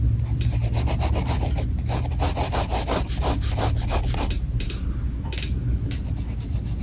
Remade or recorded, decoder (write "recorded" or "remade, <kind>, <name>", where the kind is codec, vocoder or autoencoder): recorded